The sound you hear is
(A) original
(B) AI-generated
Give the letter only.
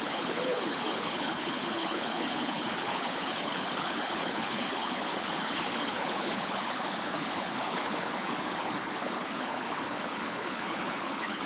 B